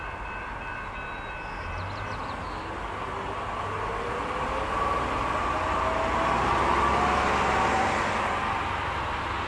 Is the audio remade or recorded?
recorded